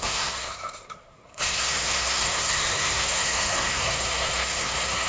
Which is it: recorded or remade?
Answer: remade